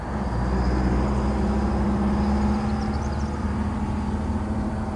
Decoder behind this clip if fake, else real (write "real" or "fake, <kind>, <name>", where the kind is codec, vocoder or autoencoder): real